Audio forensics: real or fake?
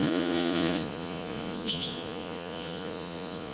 fake